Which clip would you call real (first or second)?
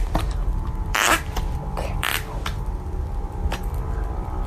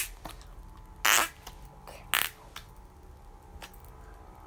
second